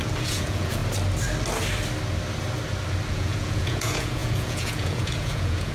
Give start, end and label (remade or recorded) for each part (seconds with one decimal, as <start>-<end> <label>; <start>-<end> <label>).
0.0-0.8 remade; 0.8-3.1 recorded; 3.1-5.7 remade